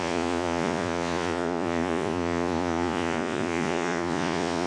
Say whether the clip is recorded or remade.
remade